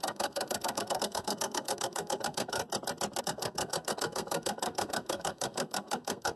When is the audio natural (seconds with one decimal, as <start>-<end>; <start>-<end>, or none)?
2.6-3.2